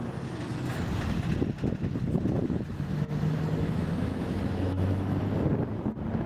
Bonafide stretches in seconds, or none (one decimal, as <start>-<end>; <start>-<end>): 0.0-2.4; 5.2-6.3